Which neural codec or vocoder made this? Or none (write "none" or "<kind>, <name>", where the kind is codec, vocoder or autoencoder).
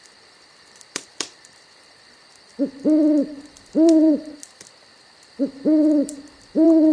vocoder, BigVGAN v2